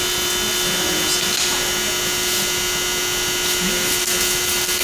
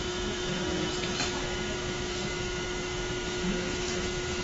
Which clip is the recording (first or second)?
first